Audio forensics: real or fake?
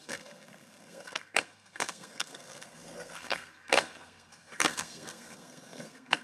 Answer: fake